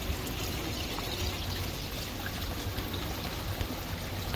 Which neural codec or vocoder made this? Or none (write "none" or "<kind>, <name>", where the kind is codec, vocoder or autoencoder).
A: none